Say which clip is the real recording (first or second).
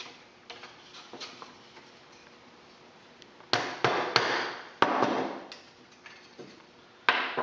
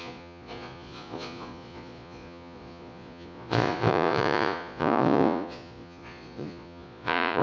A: first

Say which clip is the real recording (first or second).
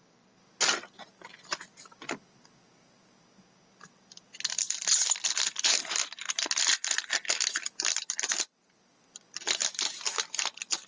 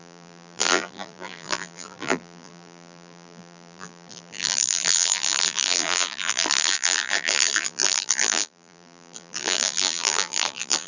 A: first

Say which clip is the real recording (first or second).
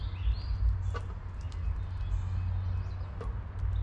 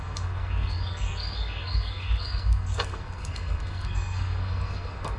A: first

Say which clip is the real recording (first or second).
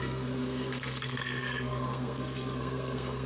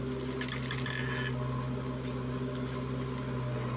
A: second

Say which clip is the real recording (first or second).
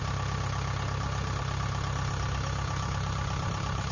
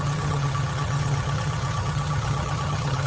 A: first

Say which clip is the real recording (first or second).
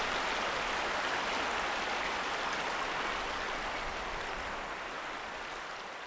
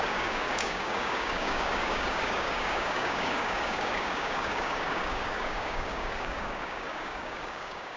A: first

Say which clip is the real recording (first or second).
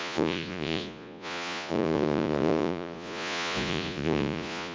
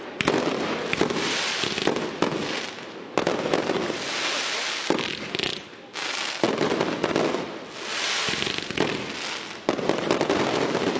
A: second